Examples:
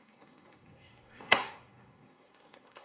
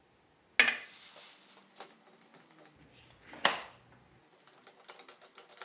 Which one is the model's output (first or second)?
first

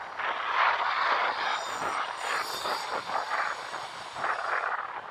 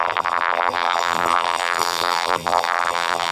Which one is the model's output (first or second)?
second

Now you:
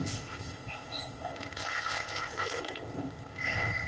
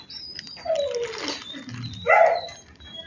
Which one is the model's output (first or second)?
first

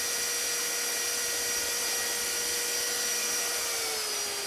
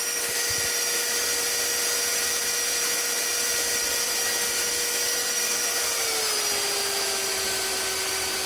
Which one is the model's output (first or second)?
second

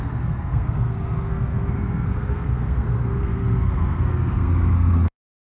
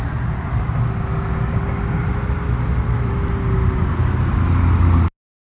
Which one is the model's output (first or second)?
first